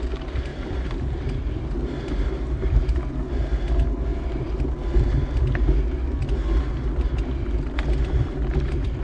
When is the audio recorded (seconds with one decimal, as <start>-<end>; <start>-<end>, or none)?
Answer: 0.0-0.5; 3.0-4.1; 4.6-9.0